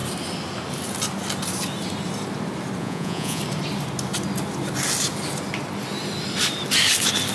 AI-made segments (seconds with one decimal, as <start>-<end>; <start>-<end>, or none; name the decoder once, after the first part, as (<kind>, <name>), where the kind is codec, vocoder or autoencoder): 2.8-3.4 (vocoder, Vocos)